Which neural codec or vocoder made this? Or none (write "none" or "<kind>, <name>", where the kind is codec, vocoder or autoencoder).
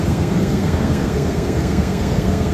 codec, SNAC